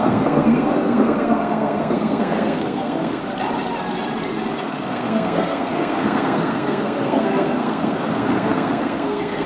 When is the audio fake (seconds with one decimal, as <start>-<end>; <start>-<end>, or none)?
0.0-3.2; 4.6-9.5